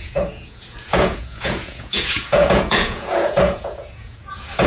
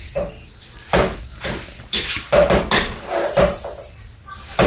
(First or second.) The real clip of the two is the second